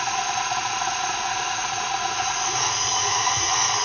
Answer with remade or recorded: remade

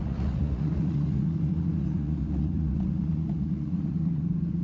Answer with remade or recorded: remade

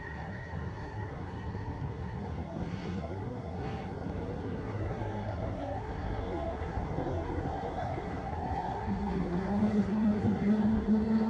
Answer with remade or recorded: remade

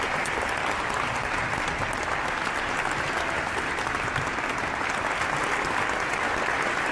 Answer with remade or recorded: recorded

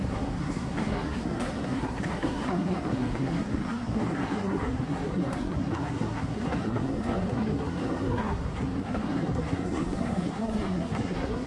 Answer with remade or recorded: remade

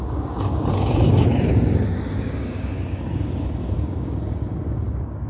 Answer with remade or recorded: remade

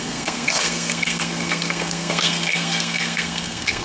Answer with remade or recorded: remade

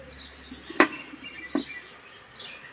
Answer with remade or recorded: recorded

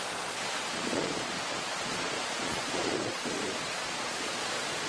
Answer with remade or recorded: remade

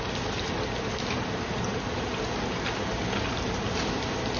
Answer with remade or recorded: recorded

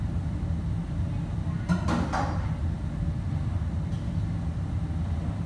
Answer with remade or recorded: recorded